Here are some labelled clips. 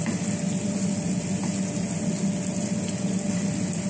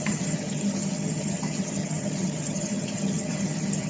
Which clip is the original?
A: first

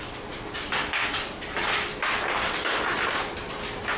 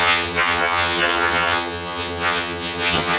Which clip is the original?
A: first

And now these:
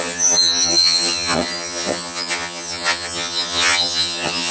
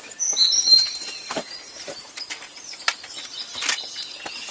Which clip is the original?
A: second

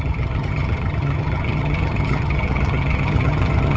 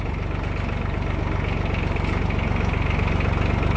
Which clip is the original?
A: second